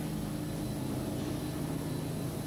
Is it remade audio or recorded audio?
recorded